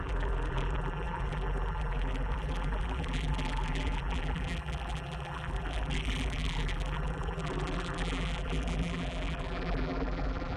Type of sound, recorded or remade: remade